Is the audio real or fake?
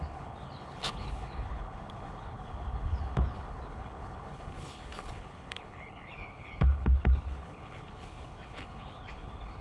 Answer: fake